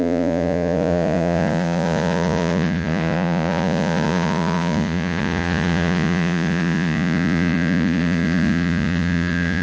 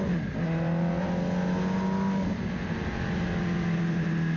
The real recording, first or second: second